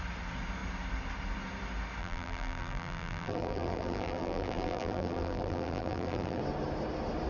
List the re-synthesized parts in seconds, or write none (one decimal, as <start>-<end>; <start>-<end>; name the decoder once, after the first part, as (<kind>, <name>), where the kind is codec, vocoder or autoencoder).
2.0-6.4 (vocoder, BigVGAN v2)